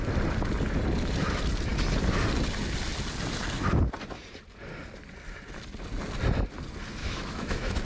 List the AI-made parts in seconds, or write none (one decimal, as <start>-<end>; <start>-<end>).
7.0-7.8